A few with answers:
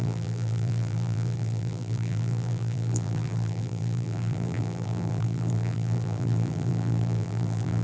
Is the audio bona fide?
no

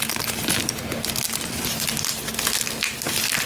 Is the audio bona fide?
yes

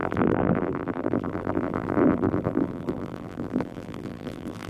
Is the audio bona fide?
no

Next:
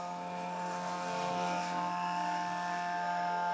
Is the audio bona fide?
no